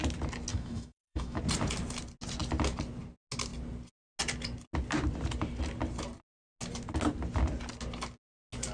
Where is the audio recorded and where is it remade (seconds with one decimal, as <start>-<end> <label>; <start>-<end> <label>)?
0.0-0.5 recorded; 0.5-1.4 remade; 1.4-8.7 recorded